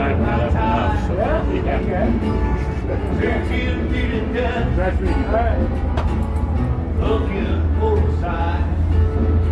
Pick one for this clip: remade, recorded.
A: recorded